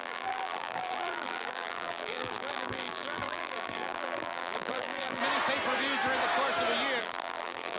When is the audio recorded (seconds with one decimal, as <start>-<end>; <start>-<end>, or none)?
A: 5.2-7.0